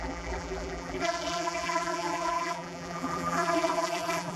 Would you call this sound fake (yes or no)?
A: yes